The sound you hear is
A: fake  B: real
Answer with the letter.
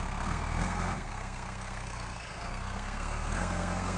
A